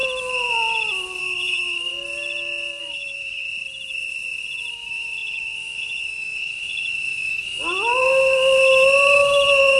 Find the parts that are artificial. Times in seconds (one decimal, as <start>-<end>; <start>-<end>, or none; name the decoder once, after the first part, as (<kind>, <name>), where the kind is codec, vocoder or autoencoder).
1.2-1.9 (autoencoder, DAC-VAE); 2.8-3.4; 4.7-9.8